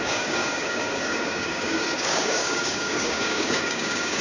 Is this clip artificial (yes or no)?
yes